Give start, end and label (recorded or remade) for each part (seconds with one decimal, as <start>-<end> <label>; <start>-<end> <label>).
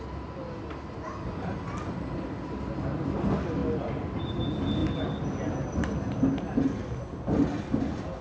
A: 0.0-8.2 recorded